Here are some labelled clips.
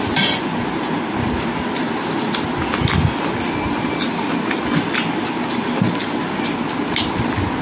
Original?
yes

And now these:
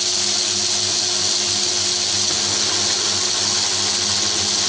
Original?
yes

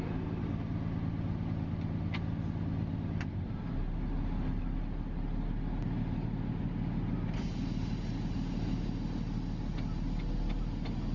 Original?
yes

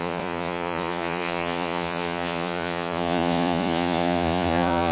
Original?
no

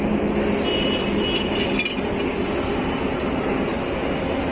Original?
yes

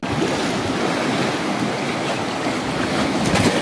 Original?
yes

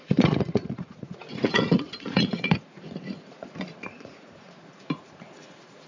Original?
no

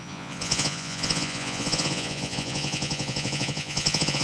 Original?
no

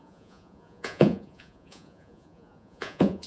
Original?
no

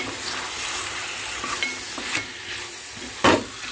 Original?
yes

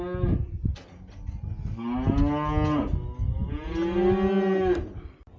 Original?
yes